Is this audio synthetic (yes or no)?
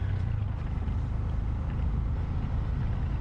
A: no